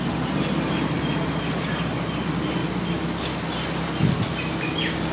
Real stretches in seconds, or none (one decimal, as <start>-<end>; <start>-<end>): 0.0-5.1